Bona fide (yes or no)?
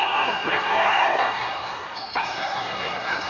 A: no